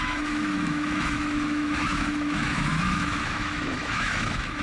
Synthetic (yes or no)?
yes